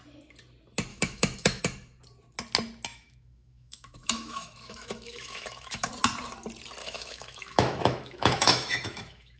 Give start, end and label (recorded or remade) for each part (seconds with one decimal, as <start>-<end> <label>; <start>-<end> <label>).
0.0-0.9 recorded; 0.9-1.6 remade; 1.6-2.9 recorded; 2.9-5.9 remade; 5.9-6.8 recorded; 6.8-9.4 remade